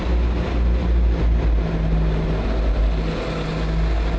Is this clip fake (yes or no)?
no